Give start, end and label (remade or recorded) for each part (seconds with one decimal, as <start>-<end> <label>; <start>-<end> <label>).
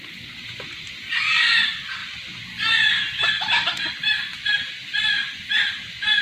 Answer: 0.0-2.0 recorded; 2.0-5.7 remade; 5.7-6.2 recorded